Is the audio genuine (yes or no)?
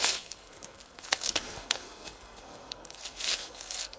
no